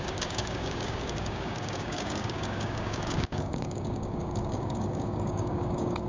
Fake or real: fake